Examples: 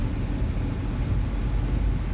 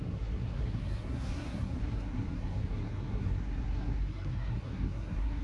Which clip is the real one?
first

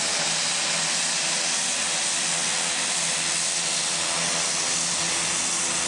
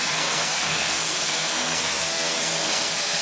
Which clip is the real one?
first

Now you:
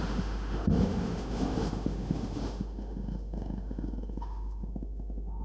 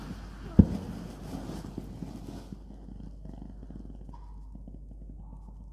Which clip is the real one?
second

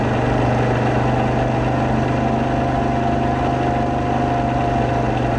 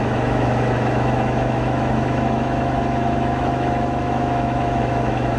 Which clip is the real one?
first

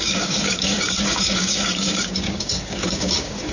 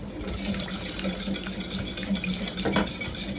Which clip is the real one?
second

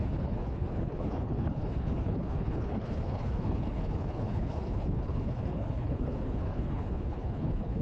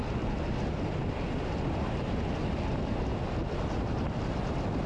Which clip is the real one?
second